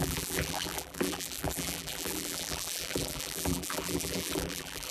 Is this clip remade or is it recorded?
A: remade